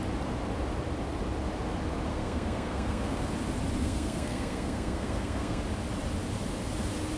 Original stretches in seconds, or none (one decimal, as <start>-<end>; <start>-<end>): 0.0-2.1; 3.3-3.8; 5.6-7.2